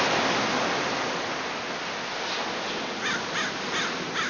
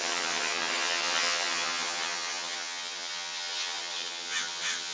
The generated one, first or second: second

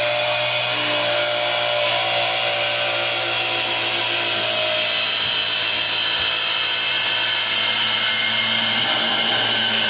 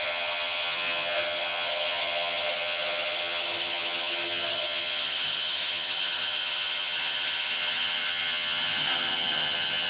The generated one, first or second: second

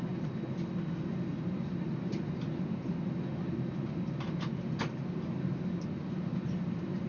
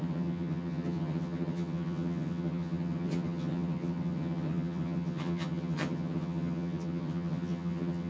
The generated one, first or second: second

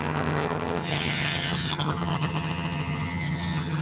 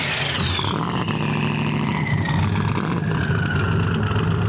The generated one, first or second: first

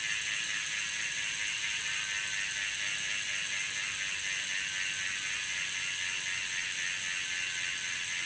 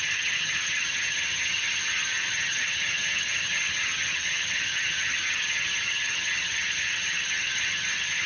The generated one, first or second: second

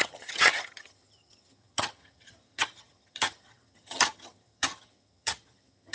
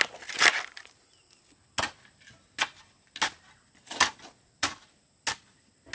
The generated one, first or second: first